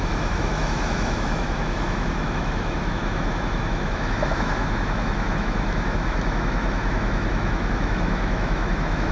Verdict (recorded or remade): remade